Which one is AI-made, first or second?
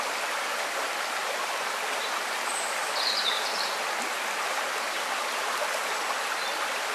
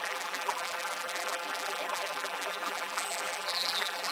second